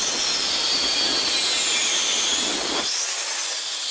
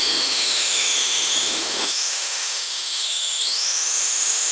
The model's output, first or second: second